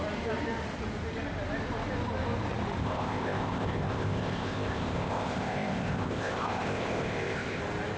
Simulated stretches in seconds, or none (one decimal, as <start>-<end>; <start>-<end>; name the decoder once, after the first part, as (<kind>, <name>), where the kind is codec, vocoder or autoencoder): 2.8-7.6 (codec, ZipCodec)